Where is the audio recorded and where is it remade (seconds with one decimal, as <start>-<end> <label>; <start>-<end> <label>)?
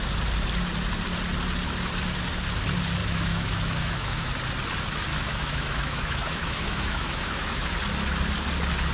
0.0-3.0 recorded; 3.0-4.3 remade; 4.3-5.1 recorded; 5.1-7.7 remade; 7.7-8.9 recorded